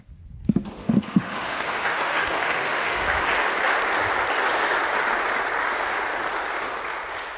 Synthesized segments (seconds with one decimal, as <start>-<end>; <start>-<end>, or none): 0.8-3.3